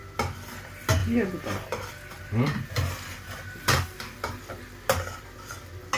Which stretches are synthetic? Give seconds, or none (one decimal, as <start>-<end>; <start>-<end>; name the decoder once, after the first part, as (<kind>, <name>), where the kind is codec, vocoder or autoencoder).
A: 1.0-4.4 (vocoder, BigVGAN v2)